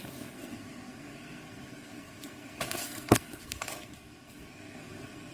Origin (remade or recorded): remade